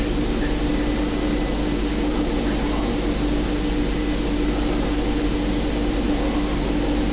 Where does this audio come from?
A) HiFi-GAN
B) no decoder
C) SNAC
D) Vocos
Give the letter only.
B